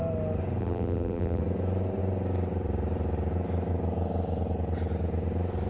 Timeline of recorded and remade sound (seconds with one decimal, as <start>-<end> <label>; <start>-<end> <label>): 0.0-0.6 recorded; 0.6-1.4 remade; 1.4-5.7 recorded